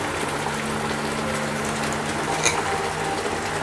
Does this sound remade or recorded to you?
recorded